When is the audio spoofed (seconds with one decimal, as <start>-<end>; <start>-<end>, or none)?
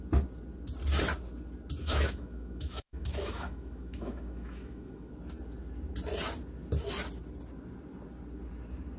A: 1.8-5.1